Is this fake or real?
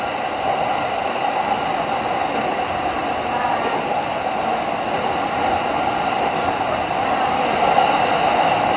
real